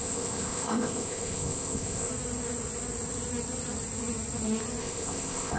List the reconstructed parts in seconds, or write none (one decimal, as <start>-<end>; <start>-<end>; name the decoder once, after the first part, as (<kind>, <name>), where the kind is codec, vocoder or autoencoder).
0.0-2.1 (codec, ZipCodec); 4.8-5.6